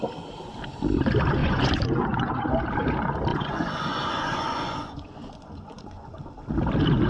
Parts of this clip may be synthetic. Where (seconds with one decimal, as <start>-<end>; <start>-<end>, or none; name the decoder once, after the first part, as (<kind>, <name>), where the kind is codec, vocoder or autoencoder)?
1.4-2.4 (vocoder, Vocos); 3.3-6.2